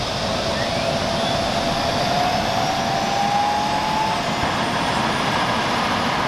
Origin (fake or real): real